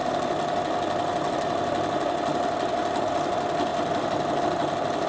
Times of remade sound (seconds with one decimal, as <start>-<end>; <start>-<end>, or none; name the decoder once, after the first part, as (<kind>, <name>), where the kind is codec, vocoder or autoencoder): none